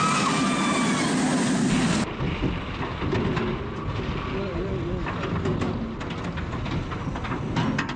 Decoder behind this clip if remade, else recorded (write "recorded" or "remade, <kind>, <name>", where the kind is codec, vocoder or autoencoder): recorded